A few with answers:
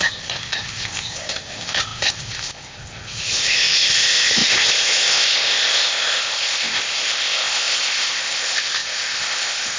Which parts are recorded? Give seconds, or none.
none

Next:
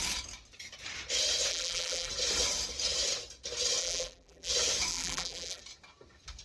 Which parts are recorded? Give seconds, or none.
0.0-1.5; 2.1-3.8; 4.5-4.9; 5.6-6.4

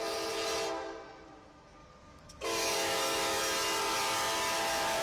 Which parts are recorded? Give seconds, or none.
0.0-1.8; 3.4-5.0

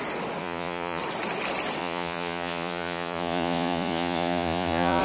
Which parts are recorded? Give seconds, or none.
0.0-0.4; 1.0-1.8

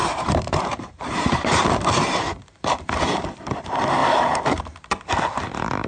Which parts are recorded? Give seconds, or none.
3.5-4.0; 4.6-5.9

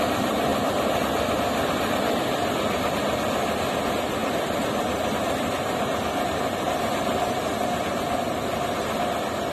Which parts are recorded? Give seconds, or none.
0.0-9.5

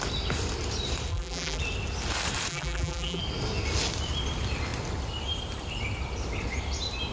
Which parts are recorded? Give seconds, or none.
0.0-1.1; 1.6-2.5; 3.2-7.1

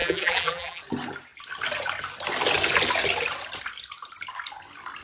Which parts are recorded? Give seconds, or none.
0.8-5.0